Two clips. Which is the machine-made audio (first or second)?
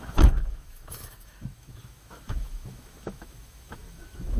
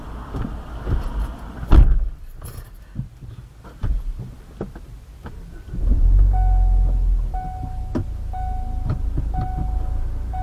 first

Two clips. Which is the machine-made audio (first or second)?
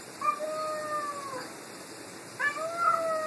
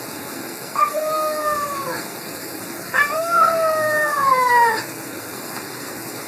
second